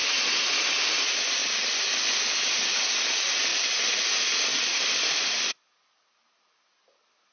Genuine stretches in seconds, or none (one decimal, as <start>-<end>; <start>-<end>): 0.0-3.5; 4.0-4.5; 5.7-7.3